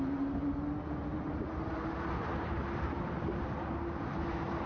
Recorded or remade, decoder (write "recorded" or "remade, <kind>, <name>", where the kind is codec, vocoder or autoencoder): recorded